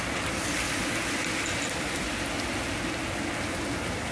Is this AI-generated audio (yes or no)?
no